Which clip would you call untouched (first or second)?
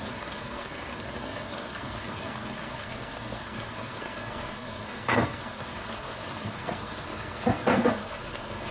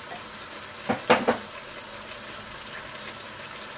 second